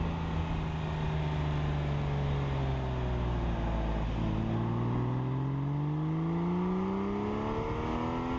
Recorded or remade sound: recorded